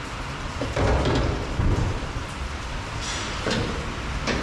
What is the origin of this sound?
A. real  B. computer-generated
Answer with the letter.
B